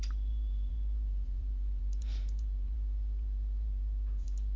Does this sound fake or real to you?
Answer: fake